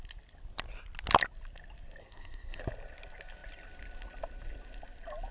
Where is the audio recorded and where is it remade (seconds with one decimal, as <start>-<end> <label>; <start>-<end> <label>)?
0.0-2.0 recorded; 2.0-2.6 remade; 2.6-5.3 recorded